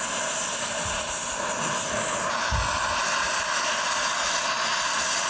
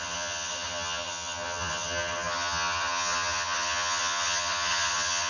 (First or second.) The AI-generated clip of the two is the second